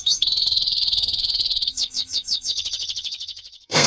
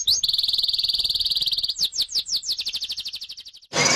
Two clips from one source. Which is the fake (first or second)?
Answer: first